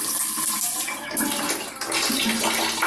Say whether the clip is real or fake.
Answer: real